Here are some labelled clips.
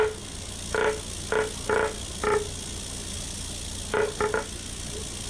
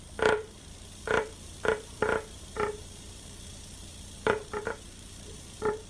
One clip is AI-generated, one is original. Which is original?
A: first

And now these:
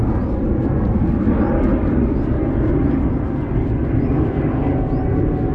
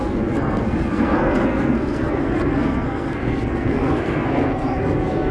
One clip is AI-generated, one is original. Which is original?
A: first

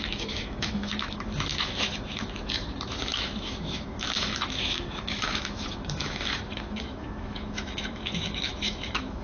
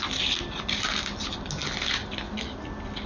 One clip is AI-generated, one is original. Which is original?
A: second